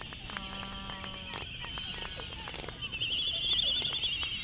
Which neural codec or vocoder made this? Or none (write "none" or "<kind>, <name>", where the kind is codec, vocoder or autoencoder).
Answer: none